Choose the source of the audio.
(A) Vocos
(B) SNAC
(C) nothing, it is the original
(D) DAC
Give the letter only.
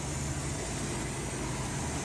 C